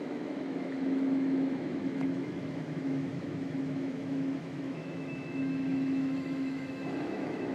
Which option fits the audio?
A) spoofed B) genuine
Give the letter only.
A